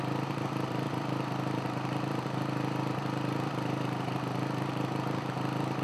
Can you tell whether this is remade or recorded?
remade